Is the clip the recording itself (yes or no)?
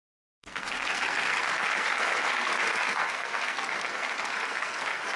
no